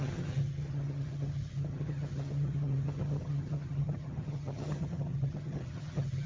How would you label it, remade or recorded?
remade